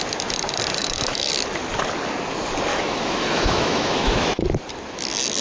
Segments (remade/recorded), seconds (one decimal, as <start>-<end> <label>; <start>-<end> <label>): 0.0-0.8 recorded; 0.8-1.3 remade; 1.3-2.7 recorded; 2.7-4.4 remade; 4.4-5.4 recorded